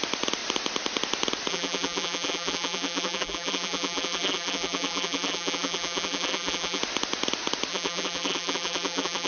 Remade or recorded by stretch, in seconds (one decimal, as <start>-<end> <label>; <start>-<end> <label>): 0.0-1.5 recorded; 1.5-6.8 remade; 6.8-7.7 recorded; 7.7-9.3 remade